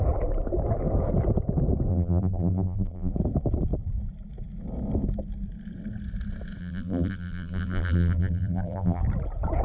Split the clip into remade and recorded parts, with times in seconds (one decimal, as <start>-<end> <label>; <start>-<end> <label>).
0.0-1.9 recorded; 1.9-3.1 remade; 3.1-6.6 recorded; 6.6-9.0 remade; 9.0-9.6 recorded